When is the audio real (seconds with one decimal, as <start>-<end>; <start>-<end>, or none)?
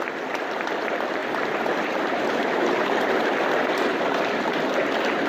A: 0.0-5.3